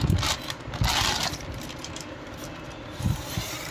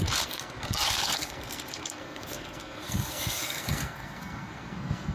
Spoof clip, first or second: second